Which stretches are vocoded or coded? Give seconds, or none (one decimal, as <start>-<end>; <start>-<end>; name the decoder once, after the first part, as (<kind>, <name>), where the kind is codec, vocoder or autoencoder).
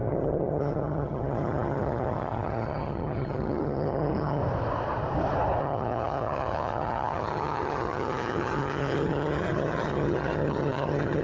0.0-4.4 (vocoder, HiFi-GAN); 5.6-11.2